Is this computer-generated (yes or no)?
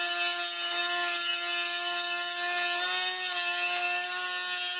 no